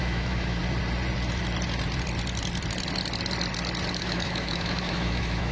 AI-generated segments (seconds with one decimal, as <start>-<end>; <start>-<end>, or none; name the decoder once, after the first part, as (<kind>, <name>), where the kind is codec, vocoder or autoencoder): 0.0-0.6 (autoencoder, DAC-VAE); 3.9-5.5